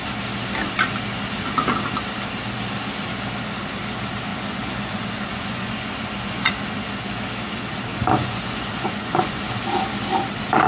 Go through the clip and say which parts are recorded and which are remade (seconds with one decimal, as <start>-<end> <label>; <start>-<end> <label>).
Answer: 0.0-4.3 recorded; 4.3-6.5 remade; 6.5-7.9 recorded; 7.9-9.5 remade; 9.5-10.7 recorded